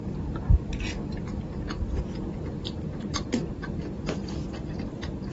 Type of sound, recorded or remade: remade